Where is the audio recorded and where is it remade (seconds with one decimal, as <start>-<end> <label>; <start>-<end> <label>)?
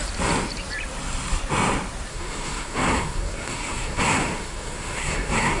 0.0-2.1 recorded; 2.1-5.6 remade